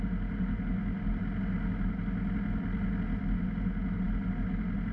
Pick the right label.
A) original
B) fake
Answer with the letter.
A